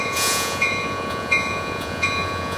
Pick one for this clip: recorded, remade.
remade